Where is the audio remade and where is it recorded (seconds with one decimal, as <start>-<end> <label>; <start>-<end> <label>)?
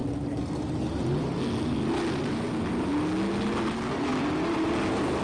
0.0-5.2 recorded